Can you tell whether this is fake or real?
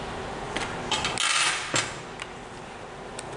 real